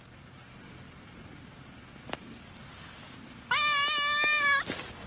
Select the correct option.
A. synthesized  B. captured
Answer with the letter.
B